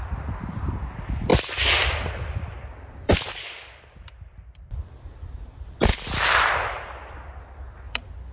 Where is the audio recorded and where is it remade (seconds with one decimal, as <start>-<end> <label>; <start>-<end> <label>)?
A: 0.0-8.3 remade